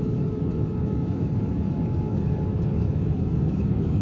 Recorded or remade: remade